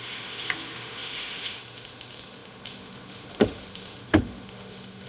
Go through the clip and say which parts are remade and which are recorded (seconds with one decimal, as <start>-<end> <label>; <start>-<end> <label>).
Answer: 0.0-5.1 remade